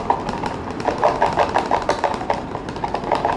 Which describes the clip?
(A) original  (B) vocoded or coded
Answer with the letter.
B